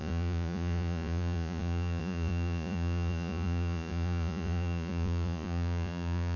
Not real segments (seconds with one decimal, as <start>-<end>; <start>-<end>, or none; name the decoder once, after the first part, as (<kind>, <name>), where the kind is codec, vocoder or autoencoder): 0.0-6.4 (vocoder, Vocos)